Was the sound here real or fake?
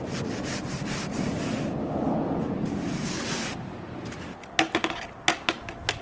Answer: real